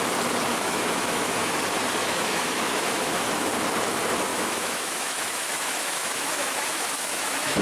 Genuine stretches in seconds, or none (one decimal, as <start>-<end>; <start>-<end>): 0.0-0.5; 1.6-2.0; 3.5-4.3